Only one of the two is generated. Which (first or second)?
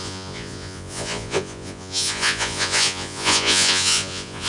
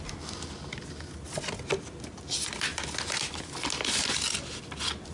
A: first